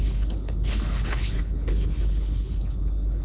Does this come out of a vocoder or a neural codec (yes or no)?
yes